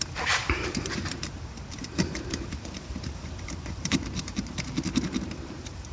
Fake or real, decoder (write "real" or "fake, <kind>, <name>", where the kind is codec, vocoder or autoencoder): fake, vocoder, BigVGAN v2